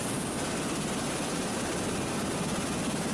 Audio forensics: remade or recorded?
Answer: recorded